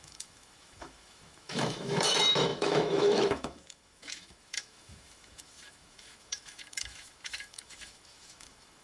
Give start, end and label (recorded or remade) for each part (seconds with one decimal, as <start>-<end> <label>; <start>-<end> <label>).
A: 0.0-8.8 remade